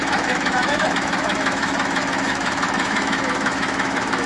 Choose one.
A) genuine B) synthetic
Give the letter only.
B